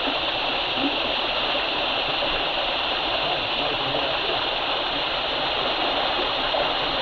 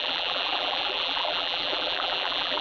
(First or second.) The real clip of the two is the first